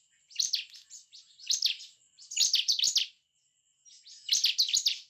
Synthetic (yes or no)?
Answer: no